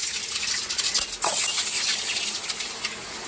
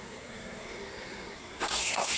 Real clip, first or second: first